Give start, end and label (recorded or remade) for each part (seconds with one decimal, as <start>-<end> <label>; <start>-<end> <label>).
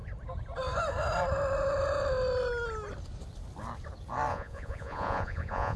0.0-4.3 recorded; 4.3-5.8 remade